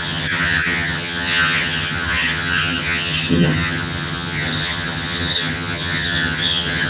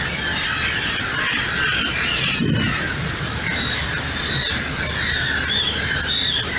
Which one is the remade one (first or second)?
first